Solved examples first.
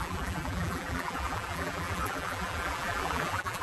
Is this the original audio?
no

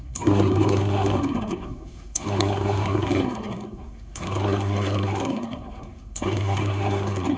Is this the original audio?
no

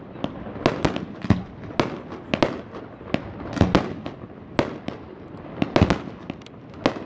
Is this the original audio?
yes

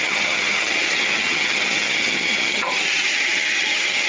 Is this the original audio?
no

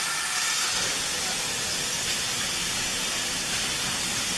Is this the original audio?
yes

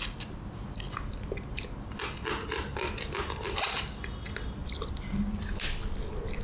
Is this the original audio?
yes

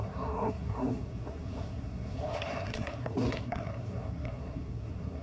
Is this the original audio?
no